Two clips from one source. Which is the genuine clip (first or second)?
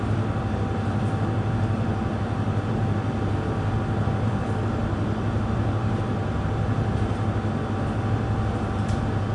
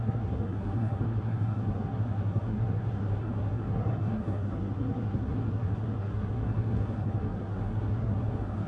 first